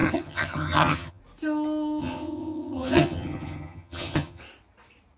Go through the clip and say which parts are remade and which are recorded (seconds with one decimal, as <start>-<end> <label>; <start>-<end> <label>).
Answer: 0.0-1.2 remade; 1.2-2.0 recorded; 2.0-4.4 remade; 4.4-5.2 recorded